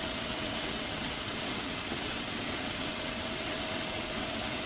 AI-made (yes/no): yes